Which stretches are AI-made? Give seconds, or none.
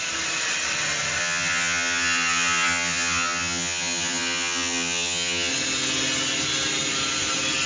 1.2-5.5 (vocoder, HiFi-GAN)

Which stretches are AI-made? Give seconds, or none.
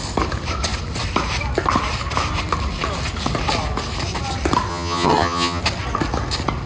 4.7-5.6 (vocoder, HiFi-GAN)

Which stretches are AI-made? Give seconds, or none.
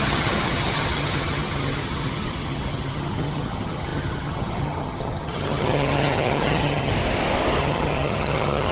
0.0-6.9 (vocoder, HiFi-GAN); 7.6-8.7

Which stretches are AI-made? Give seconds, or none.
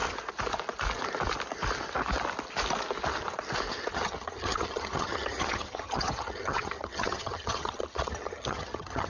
3.9-9.1 (vocoder, HiFi-GAN)